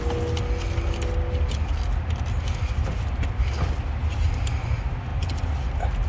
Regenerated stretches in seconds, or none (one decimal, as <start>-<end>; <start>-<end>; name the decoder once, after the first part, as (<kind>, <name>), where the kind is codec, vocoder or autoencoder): none